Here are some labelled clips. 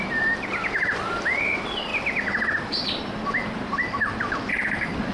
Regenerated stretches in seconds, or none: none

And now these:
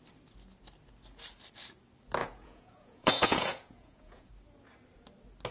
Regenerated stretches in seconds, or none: 2.2-4.3 (vocoder, Vocos)